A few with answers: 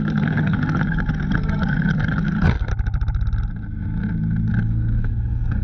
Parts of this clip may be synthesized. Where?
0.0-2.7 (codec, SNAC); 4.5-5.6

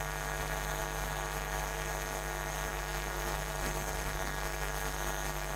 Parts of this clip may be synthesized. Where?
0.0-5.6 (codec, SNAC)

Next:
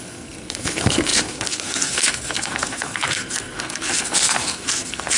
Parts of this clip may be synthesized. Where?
0.0-5.2 (codec, SNAC)

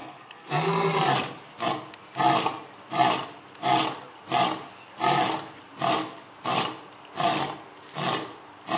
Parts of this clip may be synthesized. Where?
0.0-0.7 (codec, SNAC)

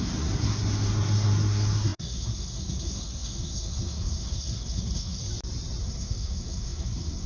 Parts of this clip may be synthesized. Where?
0.0-5.2 (codec, SNAC); 5.8-7.3